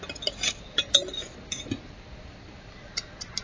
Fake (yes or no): no